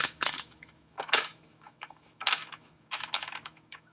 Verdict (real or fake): fake